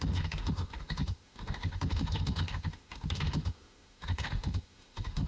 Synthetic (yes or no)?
yes